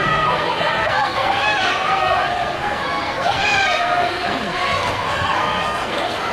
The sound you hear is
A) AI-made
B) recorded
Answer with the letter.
A